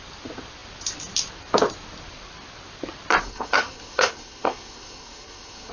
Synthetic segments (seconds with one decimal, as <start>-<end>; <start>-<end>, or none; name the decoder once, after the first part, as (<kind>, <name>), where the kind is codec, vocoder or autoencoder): 3.2-5.7 (codec, SNAC)